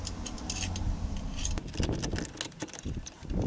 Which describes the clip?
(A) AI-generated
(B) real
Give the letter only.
B